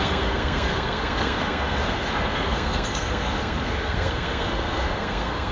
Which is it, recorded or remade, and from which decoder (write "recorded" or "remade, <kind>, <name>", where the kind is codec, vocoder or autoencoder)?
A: remade, codec, SNAC